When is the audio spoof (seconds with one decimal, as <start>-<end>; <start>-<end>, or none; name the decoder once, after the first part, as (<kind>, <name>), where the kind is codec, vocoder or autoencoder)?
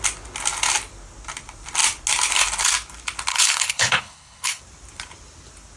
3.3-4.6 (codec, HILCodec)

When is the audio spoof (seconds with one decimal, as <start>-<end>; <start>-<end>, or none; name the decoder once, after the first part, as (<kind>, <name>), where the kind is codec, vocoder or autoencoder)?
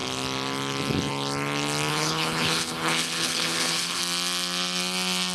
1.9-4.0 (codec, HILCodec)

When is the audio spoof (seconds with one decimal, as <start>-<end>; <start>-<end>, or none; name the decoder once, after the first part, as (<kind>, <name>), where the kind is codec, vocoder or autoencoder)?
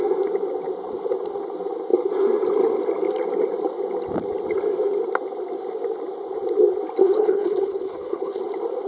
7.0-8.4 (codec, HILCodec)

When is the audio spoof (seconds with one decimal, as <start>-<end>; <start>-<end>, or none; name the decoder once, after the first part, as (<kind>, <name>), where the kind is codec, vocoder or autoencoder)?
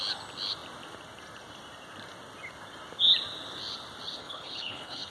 4.2-5.1 (codec, HILCodec)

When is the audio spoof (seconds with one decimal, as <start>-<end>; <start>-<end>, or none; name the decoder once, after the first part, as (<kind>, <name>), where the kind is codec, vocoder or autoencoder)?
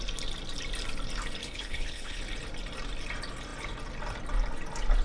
1.4-2.2 (codec, HILCodec)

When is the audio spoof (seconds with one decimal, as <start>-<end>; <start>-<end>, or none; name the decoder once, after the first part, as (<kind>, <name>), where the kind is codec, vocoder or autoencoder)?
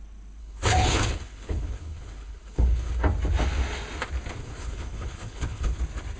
0.4-2.9 (codec, HILCodec); 4.4-5.8